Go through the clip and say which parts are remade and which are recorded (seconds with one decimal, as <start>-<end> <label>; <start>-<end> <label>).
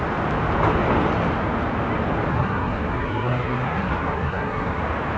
0.0-2.3 recorded; 2.3-4.8 remade; 4.8-5.2 recorded